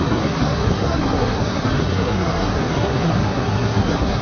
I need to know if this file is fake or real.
fake